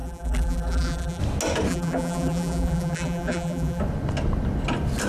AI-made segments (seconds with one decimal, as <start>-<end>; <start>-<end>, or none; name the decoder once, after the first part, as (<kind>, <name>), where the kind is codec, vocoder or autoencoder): 0.0-1.2 (vocoder, BigVGAN v2); 1.7-3.8

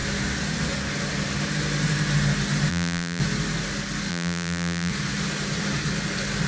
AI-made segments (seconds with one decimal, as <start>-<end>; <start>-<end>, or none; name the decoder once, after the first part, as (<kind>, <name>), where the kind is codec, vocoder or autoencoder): 2.7-3.2 (vocoder, BigVGAN v2); 4.1-4.9

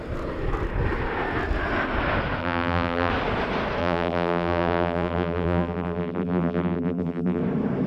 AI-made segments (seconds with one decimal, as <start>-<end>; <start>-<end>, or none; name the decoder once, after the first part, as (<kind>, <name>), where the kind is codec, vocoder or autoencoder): 2.4-3.1 (vocoder, BigVGAN v2); 3.8-7.4

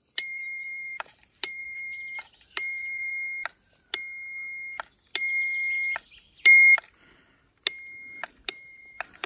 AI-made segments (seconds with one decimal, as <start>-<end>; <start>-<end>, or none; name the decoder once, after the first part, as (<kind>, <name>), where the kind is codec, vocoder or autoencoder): 0.0-3.1 (vocoder, BigVGAN v2); 8.3-9.3

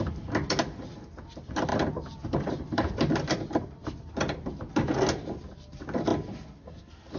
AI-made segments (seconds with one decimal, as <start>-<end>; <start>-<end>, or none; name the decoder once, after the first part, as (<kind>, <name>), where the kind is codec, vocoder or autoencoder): 1.7-4.1 (vocoder, BigVGAN v2)

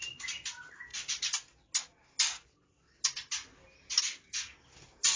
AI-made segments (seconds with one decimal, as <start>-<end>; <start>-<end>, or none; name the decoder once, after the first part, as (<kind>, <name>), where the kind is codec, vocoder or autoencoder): none

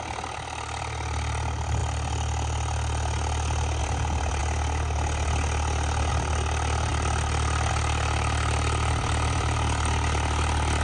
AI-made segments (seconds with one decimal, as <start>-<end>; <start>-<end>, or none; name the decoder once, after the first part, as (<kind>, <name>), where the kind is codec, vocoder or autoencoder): 0.0-4.4 (vocoder, BigVGAN v2); 6.1-10.8